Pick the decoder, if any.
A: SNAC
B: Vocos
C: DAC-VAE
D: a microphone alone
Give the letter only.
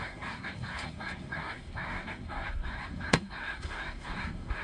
A